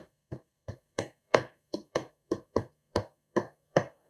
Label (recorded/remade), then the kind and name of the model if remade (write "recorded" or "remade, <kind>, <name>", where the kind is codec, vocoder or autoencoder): remade, codec, SNAC